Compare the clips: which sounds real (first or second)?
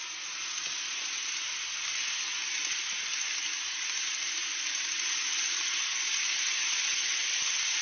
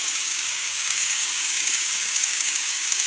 first